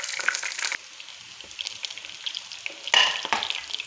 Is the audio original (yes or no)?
yes